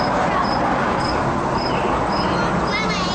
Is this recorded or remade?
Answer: recorded